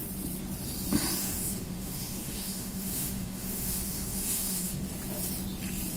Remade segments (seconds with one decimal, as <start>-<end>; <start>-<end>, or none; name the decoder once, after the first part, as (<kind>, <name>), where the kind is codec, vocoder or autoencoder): 1.2-4.8 (autoencoder, DAC-VAE)

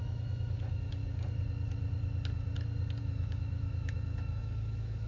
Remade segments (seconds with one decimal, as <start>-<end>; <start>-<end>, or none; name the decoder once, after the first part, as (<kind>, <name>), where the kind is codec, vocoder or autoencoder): 0.0-1.0 (autoencoder, DAC-VAE); 3.0-5.1

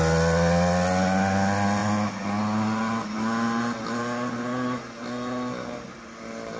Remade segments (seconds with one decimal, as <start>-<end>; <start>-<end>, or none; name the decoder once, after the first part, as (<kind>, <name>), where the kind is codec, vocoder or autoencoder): none

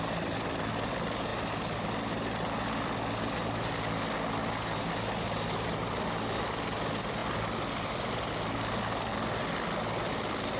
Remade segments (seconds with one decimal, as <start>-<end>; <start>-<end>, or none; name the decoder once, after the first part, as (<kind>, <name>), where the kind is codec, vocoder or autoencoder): none

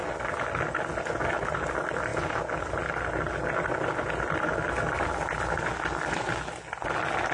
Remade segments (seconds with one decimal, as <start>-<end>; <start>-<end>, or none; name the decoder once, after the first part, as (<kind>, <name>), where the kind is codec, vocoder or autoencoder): none

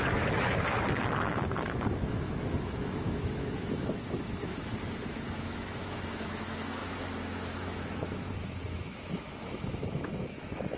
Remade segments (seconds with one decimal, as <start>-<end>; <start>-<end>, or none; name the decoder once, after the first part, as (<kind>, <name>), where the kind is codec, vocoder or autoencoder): 0.0-10.8 (autoencoder, DAC-VAE)